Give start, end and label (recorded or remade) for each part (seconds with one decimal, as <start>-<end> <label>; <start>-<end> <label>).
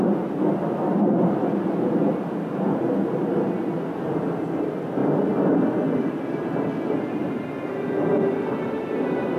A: 0.0-9.4 recorded